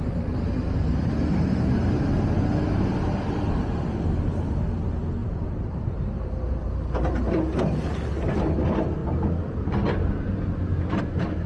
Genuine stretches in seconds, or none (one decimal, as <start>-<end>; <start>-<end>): 0.0-5.2; 6.6-11.5